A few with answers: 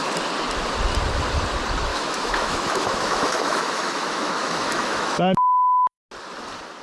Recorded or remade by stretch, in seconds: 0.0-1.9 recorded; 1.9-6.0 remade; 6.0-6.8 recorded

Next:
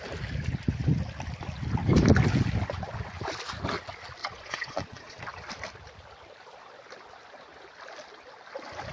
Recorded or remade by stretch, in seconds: 0.0-4.2 recorded; 4.2-5.2 remade; 5.2-8.9 recorded

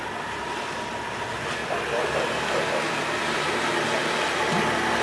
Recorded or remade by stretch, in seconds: 0.0-5.0 recorded

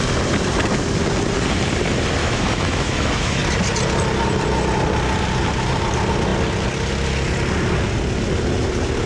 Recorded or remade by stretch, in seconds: 0.0-2.2 recorded; 2.2-3.4 remade; 3.4-9.1 recorded

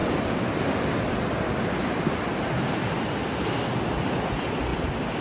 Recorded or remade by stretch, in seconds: 0.0-5.2 recorded